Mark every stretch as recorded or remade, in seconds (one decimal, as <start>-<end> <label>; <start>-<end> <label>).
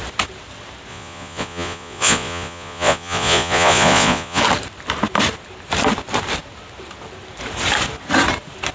0.0-0.9 recorded; 0.9-4.4 remade; 4.4-8.7 recorded